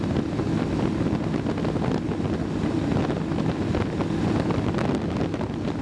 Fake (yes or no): no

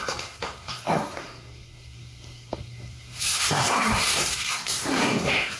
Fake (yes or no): yes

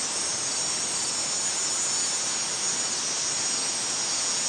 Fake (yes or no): no